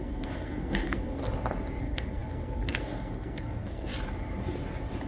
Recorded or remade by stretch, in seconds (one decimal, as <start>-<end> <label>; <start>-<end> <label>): 0.0-1.2 remade; 1.2-1.8 recorded; 1.8-3.9 remade; 3.9-5.1 recorded